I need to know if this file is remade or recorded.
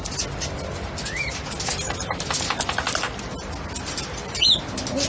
recorded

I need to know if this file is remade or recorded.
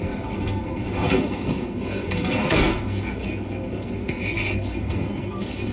remade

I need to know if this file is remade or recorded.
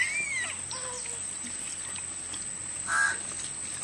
recorded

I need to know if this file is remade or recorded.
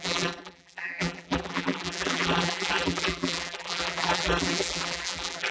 remade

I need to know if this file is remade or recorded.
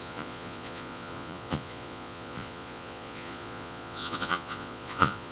remade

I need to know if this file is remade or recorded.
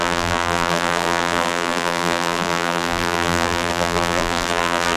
remade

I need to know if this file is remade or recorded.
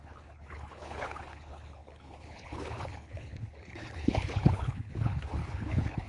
remade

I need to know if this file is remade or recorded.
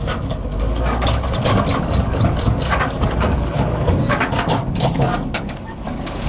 remade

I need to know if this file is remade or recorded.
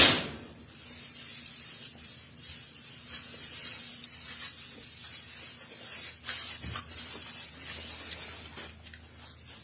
recorded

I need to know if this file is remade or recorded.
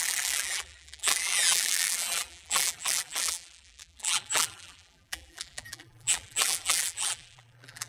remade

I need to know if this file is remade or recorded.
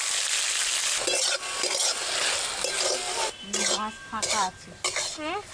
recorded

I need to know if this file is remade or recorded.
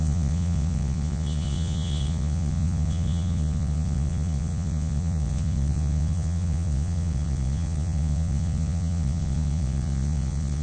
remade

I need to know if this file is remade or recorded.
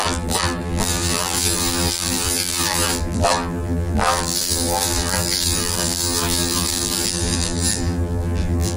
remade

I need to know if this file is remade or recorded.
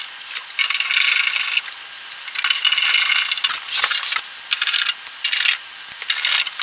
recorded